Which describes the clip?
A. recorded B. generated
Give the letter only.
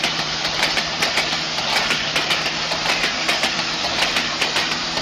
B